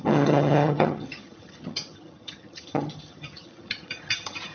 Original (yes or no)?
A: no